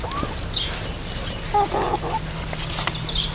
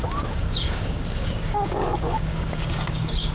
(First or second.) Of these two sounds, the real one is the first